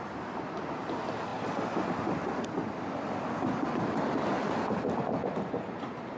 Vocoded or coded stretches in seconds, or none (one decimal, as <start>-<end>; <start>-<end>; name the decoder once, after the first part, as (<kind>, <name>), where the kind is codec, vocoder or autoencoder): none